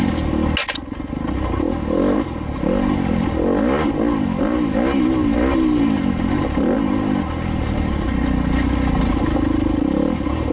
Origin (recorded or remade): recorded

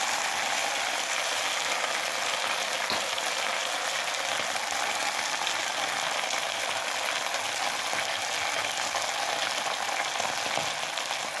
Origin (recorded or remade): recorded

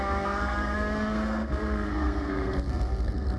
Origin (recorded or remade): remade